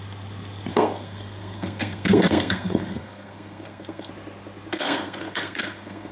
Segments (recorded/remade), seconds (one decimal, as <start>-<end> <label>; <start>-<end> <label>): 0.0-0.7 recorded; 0.7-4.1 remade; 4.1-4.7 recorded; 4.7-6.1 remade